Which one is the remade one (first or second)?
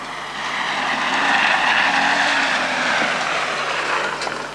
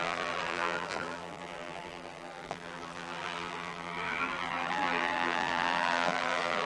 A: second